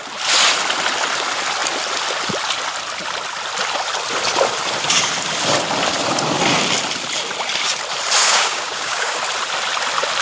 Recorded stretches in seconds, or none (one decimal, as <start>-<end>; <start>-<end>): 0.0-8.2; 9.2-10.2